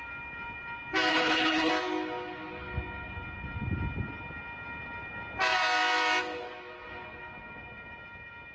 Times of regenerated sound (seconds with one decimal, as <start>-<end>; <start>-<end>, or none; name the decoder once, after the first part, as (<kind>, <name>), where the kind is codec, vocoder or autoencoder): 1.1-1.7 (codec, HILCodec)